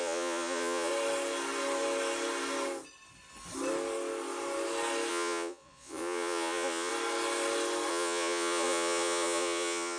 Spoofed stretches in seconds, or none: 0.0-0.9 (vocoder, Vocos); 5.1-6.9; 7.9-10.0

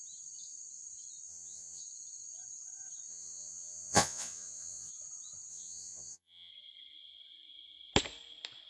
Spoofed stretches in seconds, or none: 1.3-1.8 (vocoder, Vocos); 3.1-4.9; 5.5-6.5

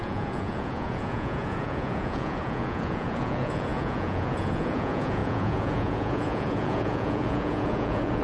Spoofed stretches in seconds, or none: 0.0-8.2 (vocoder, Vocos)